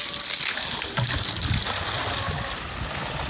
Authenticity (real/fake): real